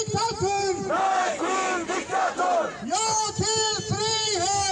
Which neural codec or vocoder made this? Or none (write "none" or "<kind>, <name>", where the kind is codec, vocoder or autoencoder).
vocoder, BigVGAN v2